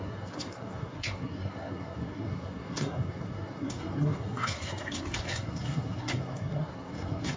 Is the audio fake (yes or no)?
yes